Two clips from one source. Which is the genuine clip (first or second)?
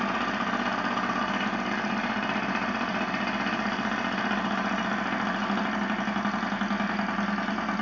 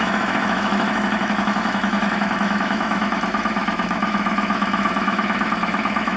first